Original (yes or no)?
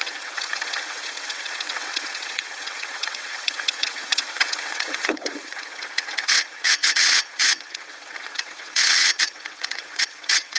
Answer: no